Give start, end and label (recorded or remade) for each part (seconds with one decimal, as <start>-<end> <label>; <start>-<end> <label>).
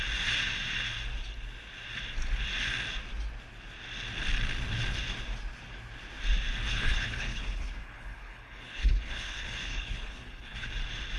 0.0-6.7 recorded; 6.7-10.7 remade; 10.7-11.2 recorded